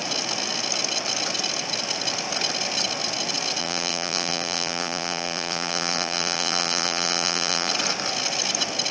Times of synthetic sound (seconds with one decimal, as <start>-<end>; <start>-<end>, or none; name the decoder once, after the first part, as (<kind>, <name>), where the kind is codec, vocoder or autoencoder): 3.6-7.7 (vocoder, BigVGAN v2)

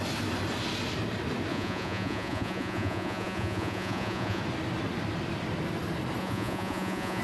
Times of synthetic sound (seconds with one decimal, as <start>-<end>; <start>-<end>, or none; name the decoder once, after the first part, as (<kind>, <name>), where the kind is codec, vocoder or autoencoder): 1.5-4.4 (vocoder, Vocos); 6.2-7.2

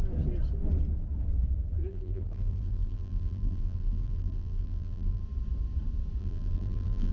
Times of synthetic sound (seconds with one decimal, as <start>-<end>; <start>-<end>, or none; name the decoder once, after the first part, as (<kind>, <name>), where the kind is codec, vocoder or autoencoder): 1.9-5.2 (vocoder, BigVGAN v2); 6.2-7.1